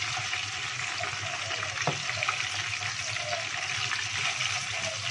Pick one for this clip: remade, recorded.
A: recorded